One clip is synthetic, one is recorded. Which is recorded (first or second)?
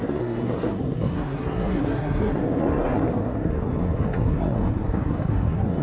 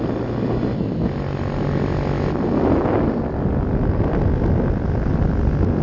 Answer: second